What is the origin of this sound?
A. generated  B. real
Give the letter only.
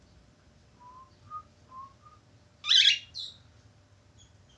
B